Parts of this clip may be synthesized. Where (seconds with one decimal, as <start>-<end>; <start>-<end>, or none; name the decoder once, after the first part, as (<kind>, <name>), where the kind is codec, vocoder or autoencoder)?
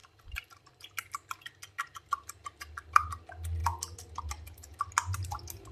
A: 0.0-0.7 (vocoder, BigVGAN v2)